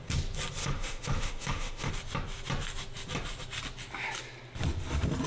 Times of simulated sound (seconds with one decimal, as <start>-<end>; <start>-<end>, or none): 0.6-1.9

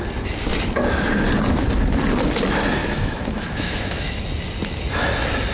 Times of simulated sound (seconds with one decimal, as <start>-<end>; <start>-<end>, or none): 2.8-4.2

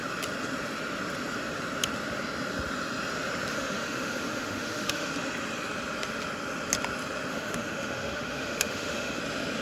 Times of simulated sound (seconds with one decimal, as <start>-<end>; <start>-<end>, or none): 3.5-5.1; 7.3-9.2